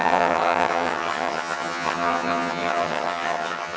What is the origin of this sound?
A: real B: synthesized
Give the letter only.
B